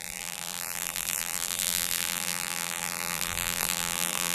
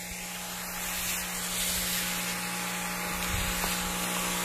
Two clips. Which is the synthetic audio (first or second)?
first